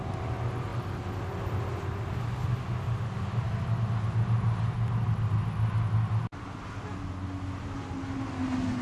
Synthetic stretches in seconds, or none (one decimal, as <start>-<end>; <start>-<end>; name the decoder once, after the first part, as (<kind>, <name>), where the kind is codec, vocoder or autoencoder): none